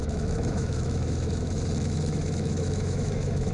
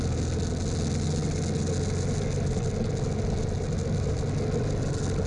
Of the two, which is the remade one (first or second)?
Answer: first